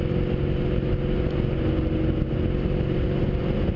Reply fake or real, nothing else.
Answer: real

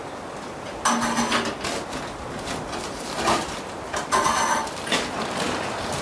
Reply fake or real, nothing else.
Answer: real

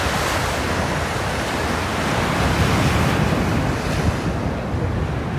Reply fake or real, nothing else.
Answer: real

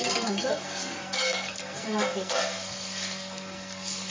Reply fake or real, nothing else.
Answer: fake